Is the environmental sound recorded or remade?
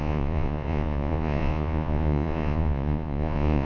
remade